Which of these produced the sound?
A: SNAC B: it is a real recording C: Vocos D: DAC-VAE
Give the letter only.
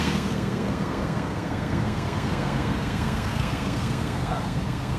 A